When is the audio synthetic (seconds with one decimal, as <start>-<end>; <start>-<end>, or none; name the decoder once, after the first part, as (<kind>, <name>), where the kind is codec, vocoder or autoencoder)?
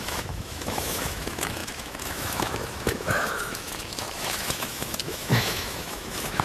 0.0-6.4 (autoencoder, DAC-VAE)